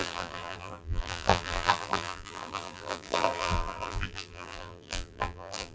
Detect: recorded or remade remade